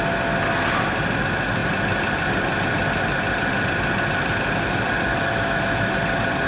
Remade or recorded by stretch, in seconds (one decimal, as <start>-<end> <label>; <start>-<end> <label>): 0.0-5.1 recorded; 5.1-5.9 remade; 5.9-6.5 recorded